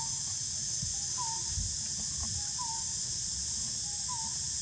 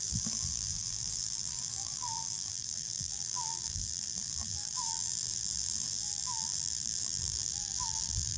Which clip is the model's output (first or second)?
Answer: second